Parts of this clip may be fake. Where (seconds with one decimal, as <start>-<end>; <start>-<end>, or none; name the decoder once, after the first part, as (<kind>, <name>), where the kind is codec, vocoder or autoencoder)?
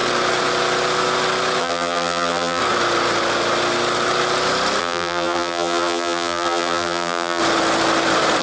1.6-2.6 (vocoder, BigVGAN v2); 4.8-7.4